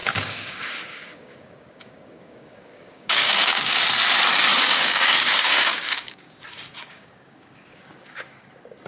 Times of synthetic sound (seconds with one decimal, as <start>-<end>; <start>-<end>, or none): 0.0-3.8; 4.5-8.5